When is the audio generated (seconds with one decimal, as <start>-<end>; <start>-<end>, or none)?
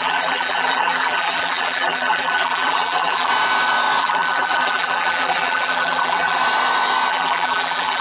0.0-3.3; 4.0-6.4; 7.1-8.0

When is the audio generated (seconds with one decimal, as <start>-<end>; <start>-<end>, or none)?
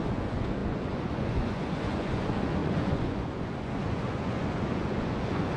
0.0-5.6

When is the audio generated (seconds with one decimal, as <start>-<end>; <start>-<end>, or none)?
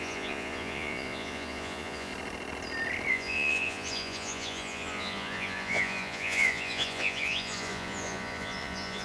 0.0-2.1; 3.1-9.0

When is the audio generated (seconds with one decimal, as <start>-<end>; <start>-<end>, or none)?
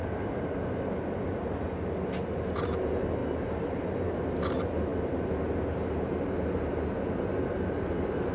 none